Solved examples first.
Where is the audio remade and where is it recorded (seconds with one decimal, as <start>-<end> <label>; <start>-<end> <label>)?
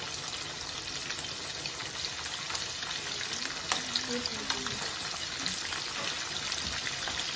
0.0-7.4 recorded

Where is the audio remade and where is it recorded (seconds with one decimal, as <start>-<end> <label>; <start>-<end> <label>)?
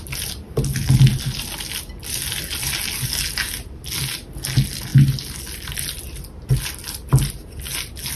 0.0-8.2 recorded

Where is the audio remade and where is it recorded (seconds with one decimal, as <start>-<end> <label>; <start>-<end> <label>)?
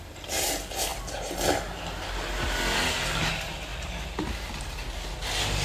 0.0-3.7 recorded; 3.7-4.2 remade; 4.2-5.6 recorded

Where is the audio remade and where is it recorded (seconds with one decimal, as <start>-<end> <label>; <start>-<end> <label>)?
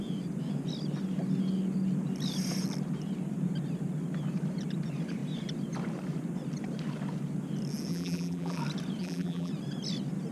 0.0-7.9 recorded; 7.9-8.6 remade; 8.6-9.0 recorded; 9.0-9.5 remade; 9.5-10.3 recorded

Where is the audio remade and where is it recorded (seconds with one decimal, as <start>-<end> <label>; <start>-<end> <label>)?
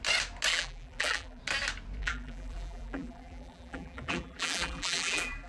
0.0-0.5 recorded; 0.5-1.4 remade; 1.4-2.0 recorded; 2.0-5.5 remade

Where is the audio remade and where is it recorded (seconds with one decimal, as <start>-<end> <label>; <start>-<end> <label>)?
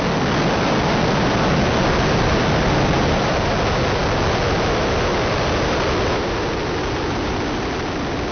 0.0-8.3 recorded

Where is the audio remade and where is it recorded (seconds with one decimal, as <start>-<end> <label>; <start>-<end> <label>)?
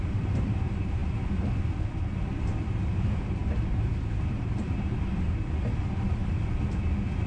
0.0-1.0 remade; 1.0-2.6 recorded; 2.6-6.2 remade; 6.2-7.3 recorded